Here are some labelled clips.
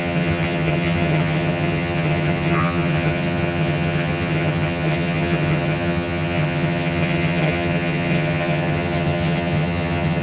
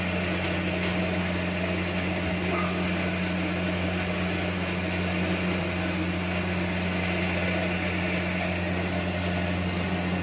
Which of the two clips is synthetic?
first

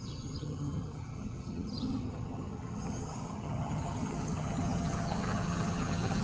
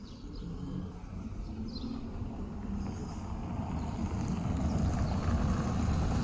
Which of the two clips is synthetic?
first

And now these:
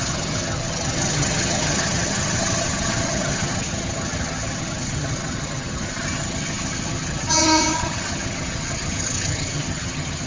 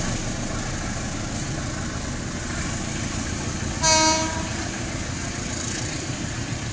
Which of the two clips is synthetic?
first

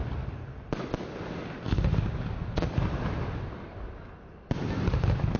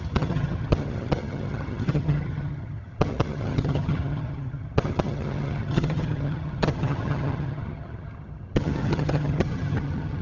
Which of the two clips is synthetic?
second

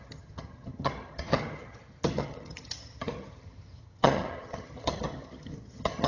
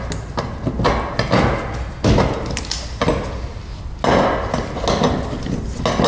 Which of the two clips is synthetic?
first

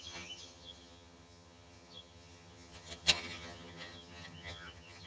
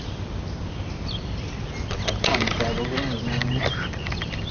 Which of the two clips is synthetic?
first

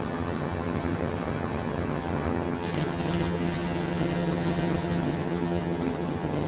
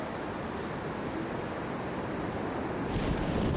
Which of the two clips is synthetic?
first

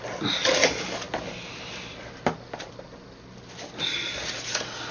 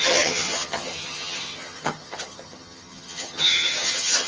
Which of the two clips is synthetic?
second